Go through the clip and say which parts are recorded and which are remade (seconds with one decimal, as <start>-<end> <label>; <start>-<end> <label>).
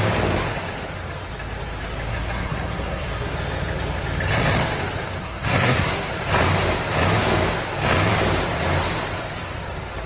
0.0-2.1 recorded; 2.1-3.3 remade; 3.3-5.2 recorded; 5.2-6.1 remade; 6.1-10.1 recorded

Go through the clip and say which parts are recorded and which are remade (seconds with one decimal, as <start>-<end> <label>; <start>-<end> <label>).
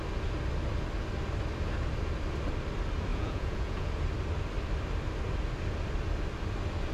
0.0-3.1 recorded; 3.1-3.9 remade; 3.9-6.9 recorded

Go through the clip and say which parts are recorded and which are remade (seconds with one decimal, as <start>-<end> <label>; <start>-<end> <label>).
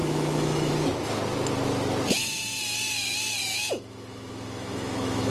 0.0-0.7 remade; 0.7-3.4 recorded; 3.4-5.3 remade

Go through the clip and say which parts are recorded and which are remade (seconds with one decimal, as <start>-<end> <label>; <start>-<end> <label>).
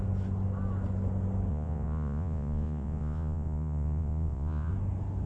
0.0-1.5 recorded; 1.5-4.7 remade; 4.7-5.3 recorded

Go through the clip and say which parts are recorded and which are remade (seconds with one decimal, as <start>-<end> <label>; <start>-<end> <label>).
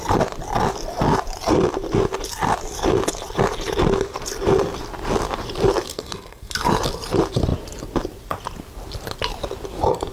0.0-5.9 recorded; 5.9-6.7 remade; 6.7-10.1 recorded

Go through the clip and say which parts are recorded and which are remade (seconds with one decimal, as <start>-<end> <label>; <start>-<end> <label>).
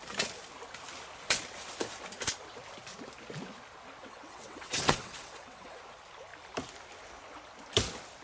0.0-4.0 recorded; 4.0-5.8 remade; 5.8-8.2 recorded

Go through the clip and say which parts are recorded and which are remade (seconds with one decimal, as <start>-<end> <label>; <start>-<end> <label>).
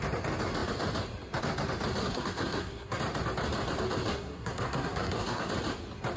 0.0-2.0 recorded; 2.0-3.0 remade; 3.0-4.1 recorded; 4.1-5.5 remade; 5.5-6.2 recorded